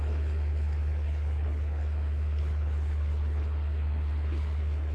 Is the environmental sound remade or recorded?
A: remade